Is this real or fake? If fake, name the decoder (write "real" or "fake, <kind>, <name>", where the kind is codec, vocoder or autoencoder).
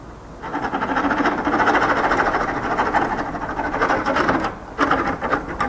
real